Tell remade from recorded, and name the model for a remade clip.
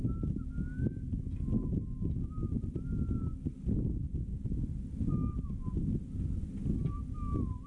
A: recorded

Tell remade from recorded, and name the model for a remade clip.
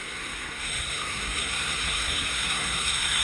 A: remade, codec, SNAC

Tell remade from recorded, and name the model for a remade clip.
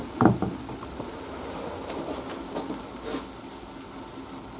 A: recorded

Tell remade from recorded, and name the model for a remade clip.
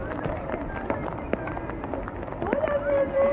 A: recorded